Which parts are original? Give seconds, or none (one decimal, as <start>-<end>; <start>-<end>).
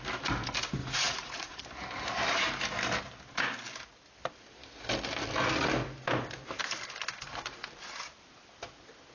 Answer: 0.0-0.8; 1.6-9.1